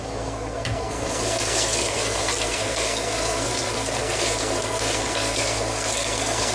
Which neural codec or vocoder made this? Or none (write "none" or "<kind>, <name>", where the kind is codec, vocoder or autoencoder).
codec, SNAC